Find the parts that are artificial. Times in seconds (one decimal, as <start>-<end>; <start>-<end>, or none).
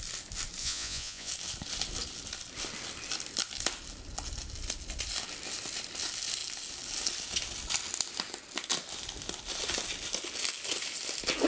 0.6-1.3